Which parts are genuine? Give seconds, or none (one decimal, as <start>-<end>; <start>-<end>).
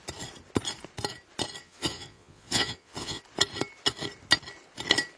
0.0-1.6; 3.2-5.2